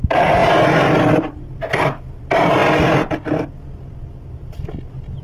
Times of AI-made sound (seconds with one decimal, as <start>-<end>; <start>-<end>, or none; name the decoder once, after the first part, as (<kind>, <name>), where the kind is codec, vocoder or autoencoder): none